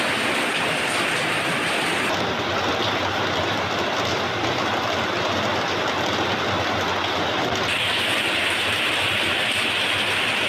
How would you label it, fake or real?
real